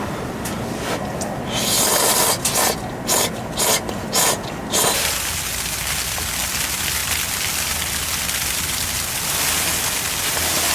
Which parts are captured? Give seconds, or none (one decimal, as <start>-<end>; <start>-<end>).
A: 0.0-10.7